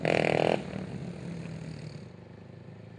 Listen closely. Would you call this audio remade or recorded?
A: recorded